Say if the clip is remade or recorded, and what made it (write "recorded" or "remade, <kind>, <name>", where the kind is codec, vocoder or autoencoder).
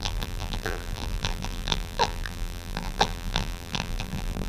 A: remade, vocoder, BigVGAN v2